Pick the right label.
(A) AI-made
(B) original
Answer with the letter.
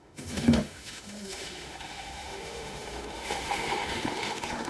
A